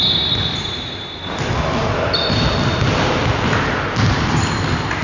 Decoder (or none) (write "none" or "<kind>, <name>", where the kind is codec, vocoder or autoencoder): none